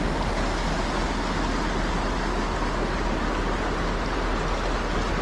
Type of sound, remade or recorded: recorded